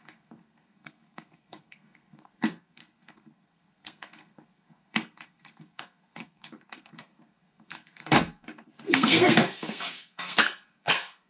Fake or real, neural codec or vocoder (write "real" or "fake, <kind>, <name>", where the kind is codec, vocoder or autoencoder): fake, codec, SNAC